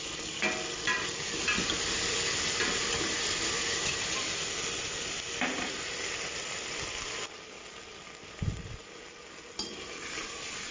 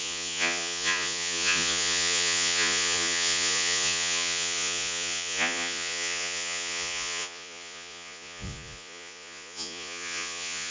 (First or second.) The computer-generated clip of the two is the second